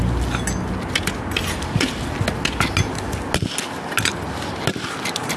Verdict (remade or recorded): recorded